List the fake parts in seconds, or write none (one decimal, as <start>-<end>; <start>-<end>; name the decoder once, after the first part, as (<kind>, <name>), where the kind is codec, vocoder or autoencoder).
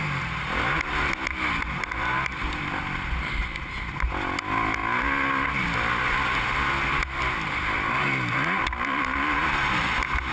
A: none